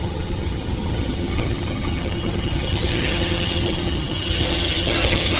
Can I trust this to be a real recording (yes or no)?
no